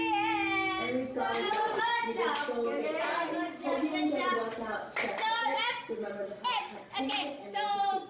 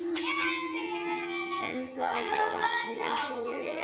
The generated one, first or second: second